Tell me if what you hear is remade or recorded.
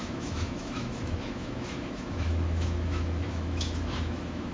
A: remade